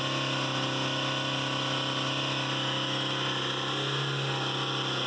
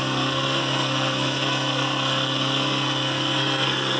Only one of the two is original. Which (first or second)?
first